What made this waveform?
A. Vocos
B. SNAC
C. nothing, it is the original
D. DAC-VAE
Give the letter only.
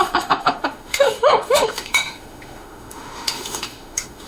D